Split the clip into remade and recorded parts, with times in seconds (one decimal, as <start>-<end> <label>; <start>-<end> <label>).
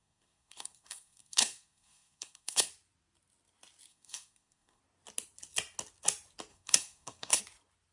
0.0-2.7 remade; 2.7-3.9 recorded; 3.9-4.8 remade; 4.8-6.5 recorded; 6.5-7.4 remade; 7.4-7.9 recorded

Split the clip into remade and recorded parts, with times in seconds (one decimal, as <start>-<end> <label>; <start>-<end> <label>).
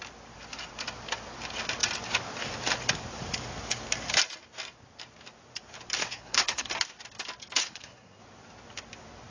0.0-6.0 recorded; 6.0-6.7 remade; 6.7-7.6 recorded; 7.6-8.2 remade; 8.2-9.3 recorded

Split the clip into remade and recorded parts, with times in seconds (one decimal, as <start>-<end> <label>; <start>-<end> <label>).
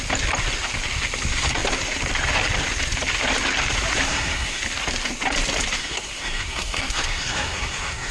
0.0-4.1 recorded; 4.1-4.6 remade; 4.6-5.8 recorded; 5.8-8.1 remade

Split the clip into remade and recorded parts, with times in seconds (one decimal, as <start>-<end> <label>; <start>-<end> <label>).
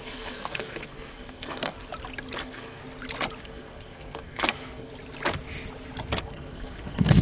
0.0-1.9 remade; 1.9-2.4 recorded; 2.4-2.8 remade; 2.8-3.4 recorded; 3.4-4.9 remade; 4.9-6.2 recorded; 6.2-7.2 remade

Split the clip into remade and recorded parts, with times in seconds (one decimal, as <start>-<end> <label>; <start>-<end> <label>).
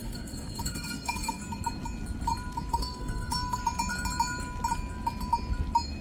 0.0-1.4 remade; 1.4-2.7 recorded; 2.7-3.6 remade; 3.6-6.0 recorded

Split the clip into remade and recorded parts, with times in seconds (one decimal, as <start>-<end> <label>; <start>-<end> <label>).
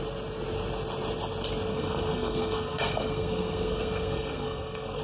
0.0-1.7 recorded; 1.7-5.0 remade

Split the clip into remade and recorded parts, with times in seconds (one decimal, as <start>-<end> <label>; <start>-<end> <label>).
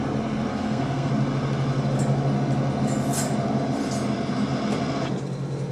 0.0-0.5 recorded; 0.5-1.1 remade; 1.1-5.7 recorded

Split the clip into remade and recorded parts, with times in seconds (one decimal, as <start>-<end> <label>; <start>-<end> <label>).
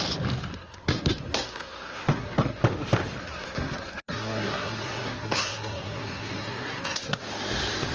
0.0-0.5 recorded; 0.5-2.6 remade; 2.6-3.2 recorded; 3.2-7.2 remade; 7.2-7.9 recorded